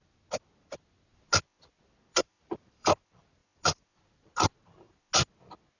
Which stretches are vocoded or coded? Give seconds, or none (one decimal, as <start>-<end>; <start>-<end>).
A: 2.2-2.9